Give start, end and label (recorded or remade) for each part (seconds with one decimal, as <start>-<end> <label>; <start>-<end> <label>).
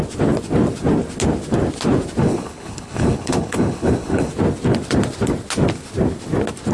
0.0-2.2 recorded; 2.2-4.3 remade; 4.3-6.7 recorded